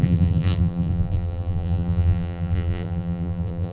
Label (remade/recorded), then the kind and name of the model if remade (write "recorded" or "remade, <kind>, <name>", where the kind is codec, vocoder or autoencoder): remade, vocoder, BigVGAN v2